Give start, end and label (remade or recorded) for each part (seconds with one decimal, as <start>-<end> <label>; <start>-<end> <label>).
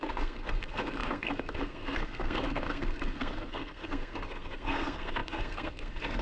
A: 0.0-6.2 remade